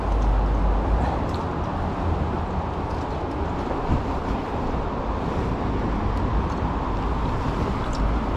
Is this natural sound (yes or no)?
yes